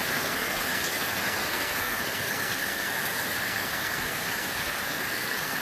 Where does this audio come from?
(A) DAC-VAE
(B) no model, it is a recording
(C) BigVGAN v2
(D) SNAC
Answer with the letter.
D